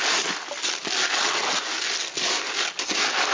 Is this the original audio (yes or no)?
yes